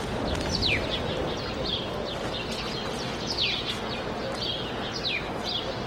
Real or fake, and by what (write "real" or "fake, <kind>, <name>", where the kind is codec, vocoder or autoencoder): real